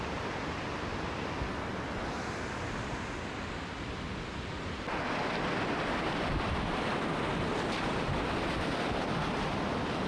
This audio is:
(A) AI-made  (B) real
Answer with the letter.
B